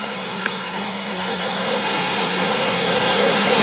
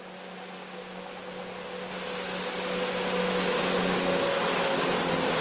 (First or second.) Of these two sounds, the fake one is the first